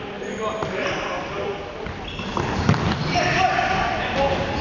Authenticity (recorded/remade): recorded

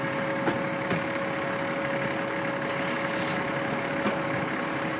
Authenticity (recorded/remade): recorded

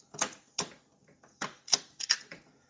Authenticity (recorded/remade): recorded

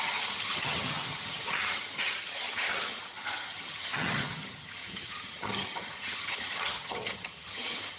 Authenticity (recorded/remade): remade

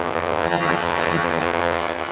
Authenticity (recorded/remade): remade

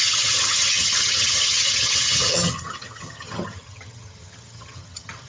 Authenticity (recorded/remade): remade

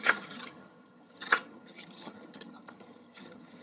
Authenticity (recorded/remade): remade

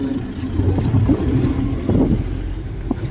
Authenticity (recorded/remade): recorded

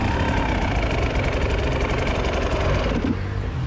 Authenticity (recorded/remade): recorded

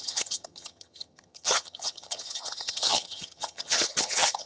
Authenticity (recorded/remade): remade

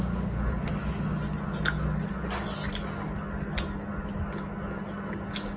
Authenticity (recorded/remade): recorded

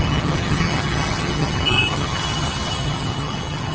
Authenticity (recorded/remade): remade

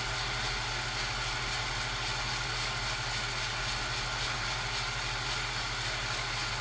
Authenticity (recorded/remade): recorded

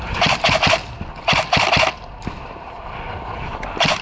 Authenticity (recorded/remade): recorded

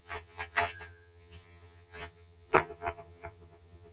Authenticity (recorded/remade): remade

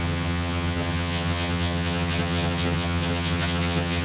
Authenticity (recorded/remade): remade